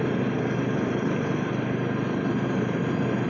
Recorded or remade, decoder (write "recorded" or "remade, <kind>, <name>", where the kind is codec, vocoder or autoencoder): recorded